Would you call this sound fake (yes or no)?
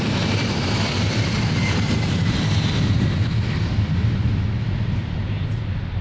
no